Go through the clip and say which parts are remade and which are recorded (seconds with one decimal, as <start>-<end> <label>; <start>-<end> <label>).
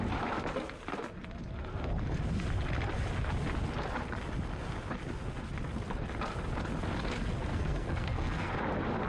0.0-7.5 recorded; 7.5-8.5 remade; 8.5-9.1 recorded